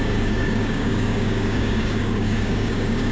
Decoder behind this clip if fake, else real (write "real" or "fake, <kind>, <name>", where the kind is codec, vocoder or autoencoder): fake, codec, DAC